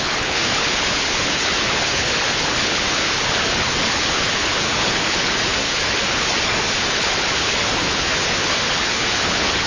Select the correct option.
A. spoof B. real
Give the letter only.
A